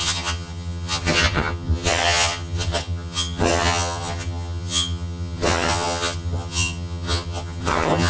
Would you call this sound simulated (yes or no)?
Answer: yes